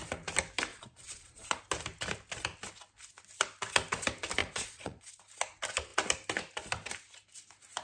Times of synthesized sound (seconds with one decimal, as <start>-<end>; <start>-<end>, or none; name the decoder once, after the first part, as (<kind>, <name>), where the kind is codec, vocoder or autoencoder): 0.7-1.6 (vocoder, Vocos); 4.4-5.2